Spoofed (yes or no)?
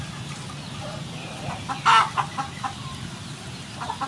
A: no